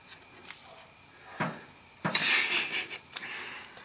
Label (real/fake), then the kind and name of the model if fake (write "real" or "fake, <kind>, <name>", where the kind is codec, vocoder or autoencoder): real